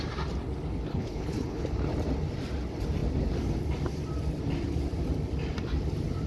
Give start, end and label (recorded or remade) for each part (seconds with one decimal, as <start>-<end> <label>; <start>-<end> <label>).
0.0-0.9 recorded; 0.9-1.7 remade; 1.7-6.3 recorded